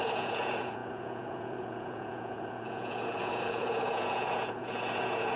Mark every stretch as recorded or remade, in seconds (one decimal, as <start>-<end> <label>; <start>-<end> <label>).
0.0-5.4 remade